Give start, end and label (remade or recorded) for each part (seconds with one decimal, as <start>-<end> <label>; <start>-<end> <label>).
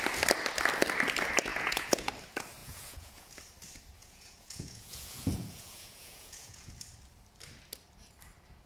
0.0-1.5 recorded; 1.5-2.1 remade; 2.1-2.6 recorded; 2.6-3.3 remade; 3.3-4.0 recorded; 4.0-6.7 remade; 6.7-8.7 recorded